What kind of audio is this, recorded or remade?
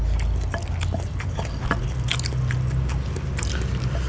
recorded